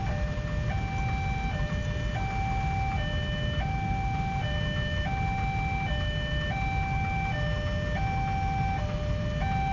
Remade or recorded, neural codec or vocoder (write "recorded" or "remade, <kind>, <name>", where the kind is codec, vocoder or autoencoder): recorded